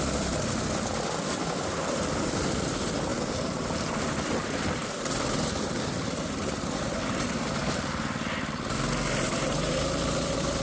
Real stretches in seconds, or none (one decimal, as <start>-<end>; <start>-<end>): none